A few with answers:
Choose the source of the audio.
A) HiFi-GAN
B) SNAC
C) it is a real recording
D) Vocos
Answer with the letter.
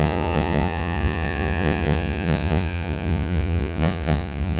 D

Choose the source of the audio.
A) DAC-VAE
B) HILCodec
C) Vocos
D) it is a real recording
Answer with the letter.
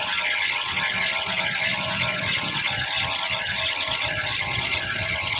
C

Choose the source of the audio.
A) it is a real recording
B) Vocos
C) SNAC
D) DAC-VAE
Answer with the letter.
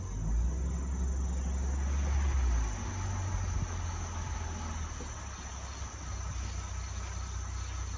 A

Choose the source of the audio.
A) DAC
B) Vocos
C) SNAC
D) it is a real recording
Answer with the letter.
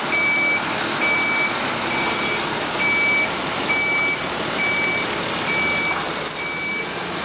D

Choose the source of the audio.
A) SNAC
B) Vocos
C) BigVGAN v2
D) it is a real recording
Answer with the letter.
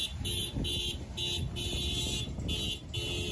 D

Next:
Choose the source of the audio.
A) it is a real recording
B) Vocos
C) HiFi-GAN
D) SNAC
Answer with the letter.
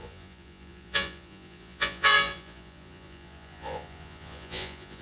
B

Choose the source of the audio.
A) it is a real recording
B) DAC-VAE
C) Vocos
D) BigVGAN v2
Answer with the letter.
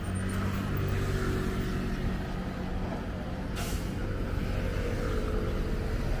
A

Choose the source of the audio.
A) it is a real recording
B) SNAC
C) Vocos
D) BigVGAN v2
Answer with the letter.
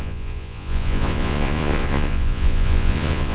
C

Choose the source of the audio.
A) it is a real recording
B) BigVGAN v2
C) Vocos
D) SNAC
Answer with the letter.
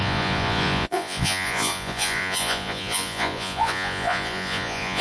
C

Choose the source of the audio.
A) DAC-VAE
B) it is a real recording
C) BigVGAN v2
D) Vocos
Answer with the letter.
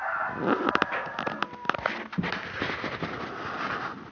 B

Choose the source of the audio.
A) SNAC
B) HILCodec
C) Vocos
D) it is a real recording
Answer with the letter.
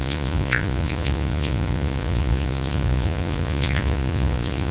C